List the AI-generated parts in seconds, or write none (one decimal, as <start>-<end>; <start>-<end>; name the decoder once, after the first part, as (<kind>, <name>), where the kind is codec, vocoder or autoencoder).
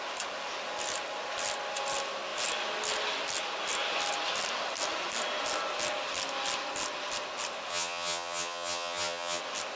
7.7-9.4 (vocoder, HiFi-GAN)